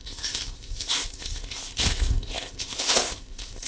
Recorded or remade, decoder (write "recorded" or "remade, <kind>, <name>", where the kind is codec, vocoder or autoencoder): remade, codec, ZipCodec